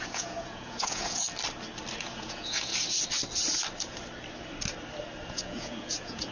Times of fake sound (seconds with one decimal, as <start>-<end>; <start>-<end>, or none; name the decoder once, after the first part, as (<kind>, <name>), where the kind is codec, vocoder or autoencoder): 0.0-1.2 (vocoder, Vocos); 2.0-2.7; 5.3-6.3